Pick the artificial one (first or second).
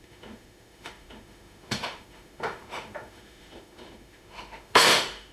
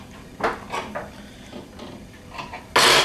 first